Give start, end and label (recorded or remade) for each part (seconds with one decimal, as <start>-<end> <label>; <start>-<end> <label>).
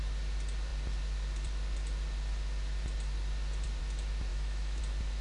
0.0-4.3 recorded; 4.3-4.8 remade; 4.8-5.2 recorded